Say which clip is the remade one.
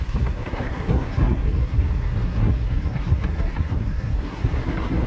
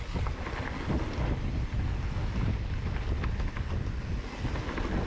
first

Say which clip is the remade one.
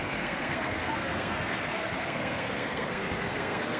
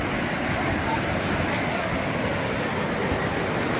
first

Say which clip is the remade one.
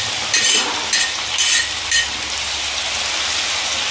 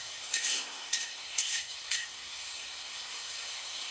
second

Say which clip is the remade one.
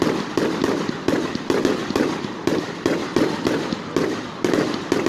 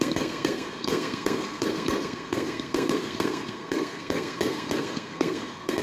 second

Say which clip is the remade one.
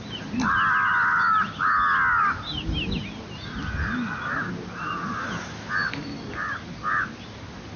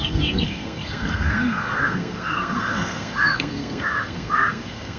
second